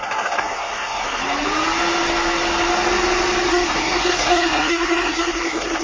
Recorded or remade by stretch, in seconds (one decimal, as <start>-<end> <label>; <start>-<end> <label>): 0.0-1.2 remade; 1.2-3.5 recorded; 3.5-5.8 remade